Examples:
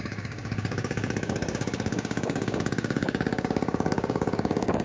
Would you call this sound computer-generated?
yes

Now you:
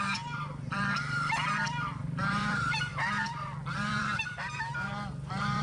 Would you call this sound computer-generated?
yes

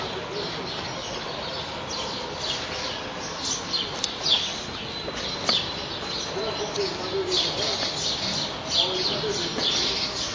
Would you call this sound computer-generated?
no